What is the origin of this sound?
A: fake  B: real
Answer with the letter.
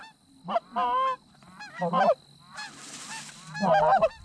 B